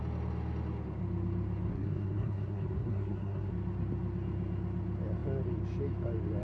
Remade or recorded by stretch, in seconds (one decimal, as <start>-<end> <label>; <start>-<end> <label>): 0.0-1.7 recorded; 1.7-3.5 remade; 3.5-6.4 recorded